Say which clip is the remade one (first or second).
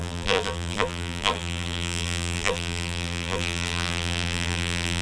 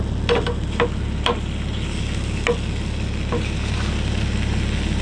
first